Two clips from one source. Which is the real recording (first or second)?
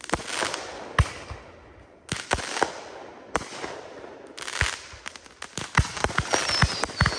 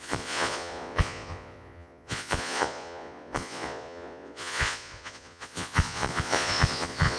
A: first